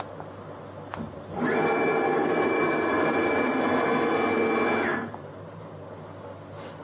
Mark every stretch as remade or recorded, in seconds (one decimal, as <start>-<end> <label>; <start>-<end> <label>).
0.0-1.9 recorded; 1.9-3.6 remade; 3.6-5.0 recorded; 5.0-5.9 remade; 5.9-6.8 recorded

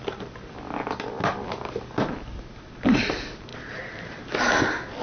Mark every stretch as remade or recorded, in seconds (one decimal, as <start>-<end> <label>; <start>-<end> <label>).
0.0-3.5 recorded; 3.5-4.2 remade; 4.2-5.0 recorded